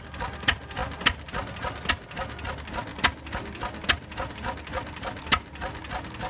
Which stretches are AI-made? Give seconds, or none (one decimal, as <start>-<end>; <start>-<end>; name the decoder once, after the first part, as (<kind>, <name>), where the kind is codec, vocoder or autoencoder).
none